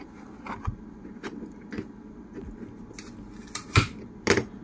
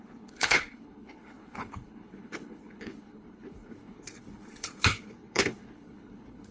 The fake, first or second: second